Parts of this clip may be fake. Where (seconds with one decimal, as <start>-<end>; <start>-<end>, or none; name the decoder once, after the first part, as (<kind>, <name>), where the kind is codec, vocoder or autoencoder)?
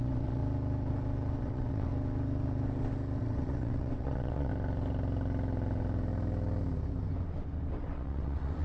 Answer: 0.0-0.4 (vocoder, WaveNeXt); 1.4-1.9; 3.2-4.5; 7.7-8.6